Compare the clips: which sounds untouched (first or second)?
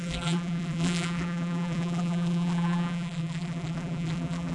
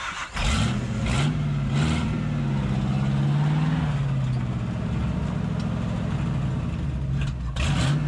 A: second